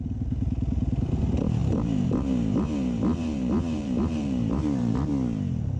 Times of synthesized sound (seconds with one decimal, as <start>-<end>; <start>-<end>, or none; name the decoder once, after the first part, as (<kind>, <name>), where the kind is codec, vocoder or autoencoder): 1.6-5.1 (vocoder, BigVGAN v2)